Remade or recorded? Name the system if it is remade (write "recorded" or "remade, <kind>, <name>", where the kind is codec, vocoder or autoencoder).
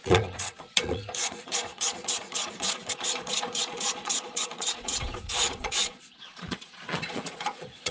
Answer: remade, vocoder, Vocos